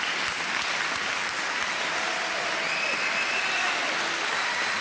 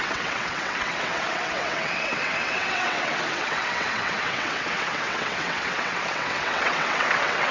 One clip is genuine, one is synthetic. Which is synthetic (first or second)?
second